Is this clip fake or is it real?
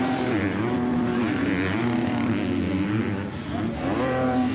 fake